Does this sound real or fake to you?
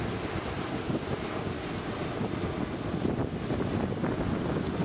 real